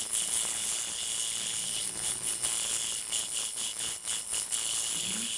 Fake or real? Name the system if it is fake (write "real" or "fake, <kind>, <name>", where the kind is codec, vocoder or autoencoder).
fake, codec, HILCodec